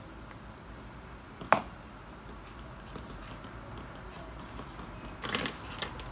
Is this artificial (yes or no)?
no